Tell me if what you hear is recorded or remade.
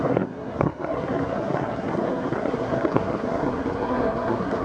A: remade